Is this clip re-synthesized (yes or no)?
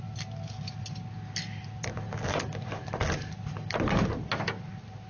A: no